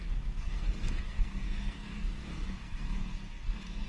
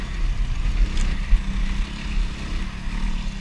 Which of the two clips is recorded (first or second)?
second